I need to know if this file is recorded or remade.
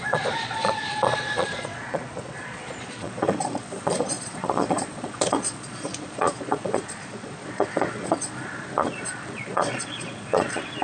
remade